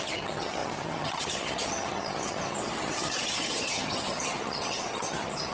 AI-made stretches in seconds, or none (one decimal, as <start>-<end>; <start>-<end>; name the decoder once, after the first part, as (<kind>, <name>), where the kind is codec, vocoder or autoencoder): 0.0-5.5 (vocoder, HiFi-GAN)